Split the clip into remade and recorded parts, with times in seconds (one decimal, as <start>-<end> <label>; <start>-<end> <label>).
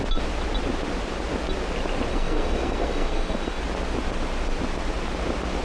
0.0-2.1 recorded; 2.1-3.6 remade; 3.6-5.6 recorded